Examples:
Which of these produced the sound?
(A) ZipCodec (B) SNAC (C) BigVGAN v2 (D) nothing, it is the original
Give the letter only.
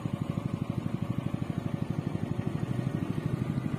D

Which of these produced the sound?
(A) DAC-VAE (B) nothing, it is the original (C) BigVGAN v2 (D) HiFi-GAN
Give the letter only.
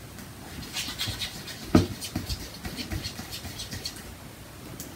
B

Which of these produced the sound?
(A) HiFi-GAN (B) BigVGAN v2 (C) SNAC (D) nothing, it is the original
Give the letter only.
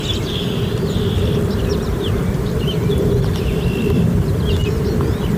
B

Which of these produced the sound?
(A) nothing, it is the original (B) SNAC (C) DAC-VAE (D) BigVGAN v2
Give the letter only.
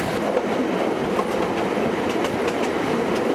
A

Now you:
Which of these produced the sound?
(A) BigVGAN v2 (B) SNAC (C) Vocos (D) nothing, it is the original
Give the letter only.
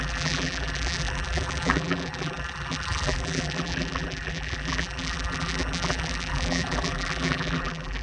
A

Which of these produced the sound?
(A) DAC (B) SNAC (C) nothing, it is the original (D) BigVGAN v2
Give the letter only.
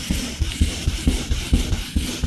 D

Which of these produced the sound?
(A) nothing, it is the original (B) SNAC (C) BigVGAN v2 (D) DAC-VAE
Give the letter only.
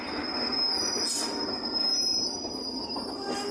A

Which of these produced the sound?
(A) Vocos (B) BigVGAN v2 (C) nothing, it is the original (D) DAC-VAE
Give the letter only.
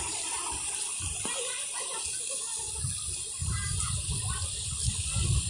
C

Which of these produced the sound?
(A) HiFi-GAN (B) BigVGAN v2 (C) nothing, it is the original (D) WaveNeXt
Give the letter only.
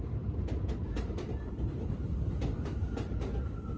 C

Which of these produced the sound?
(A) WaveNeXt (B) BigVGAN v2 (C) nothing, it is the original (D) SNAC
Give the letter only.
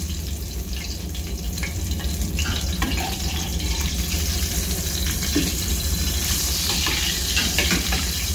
B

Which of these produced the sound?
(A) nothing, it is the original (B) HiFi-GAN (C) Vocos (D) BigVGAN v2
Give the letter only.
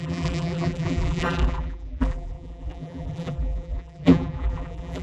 D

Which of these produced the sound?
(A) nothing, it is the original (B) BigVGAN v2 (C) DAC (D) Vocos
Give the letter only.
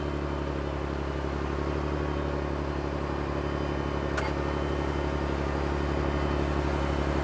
A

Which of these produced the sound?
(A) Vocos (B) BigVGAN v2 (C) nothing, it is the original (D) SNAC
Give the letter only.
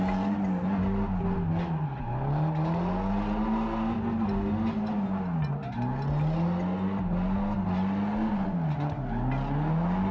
C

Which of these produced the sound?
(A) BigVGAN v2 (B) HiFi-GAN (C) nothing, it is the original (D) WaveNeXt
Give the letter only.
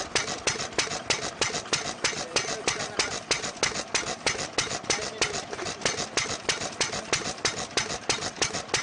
C